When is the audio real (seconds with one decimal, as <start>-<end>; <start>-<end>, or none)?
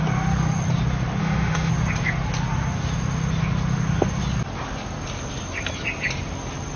0.0-1.2; 1.7-6.8